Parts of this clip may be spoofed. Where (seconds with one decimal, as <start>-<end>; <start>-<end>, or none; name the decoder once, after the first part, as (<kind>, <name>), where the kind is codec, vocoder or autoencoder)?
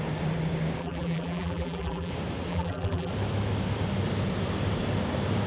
0.8-2.1 (vocoder, BigVGAN v2); 2.5-3.1